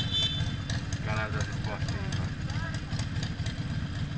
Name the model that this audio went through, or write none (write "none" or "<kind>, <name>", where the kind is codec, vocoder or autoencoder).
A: none